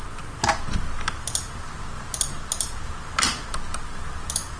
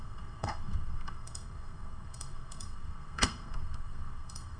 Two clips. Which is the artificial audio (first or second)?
second